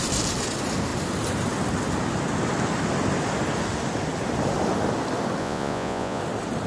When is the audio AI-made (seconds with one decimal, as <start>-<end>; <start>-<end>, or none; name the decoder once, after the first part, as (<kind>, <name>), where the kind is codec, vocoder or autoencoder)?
5.4-6.2 (vocoder, Vocos)

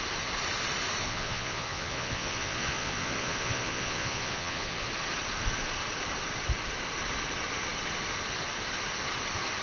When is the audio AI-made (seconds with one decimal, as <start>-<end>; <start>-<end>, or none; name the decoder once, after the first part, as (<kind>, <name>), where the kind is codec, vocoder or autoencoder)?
1.0-4.9 (vocoder, Vocos)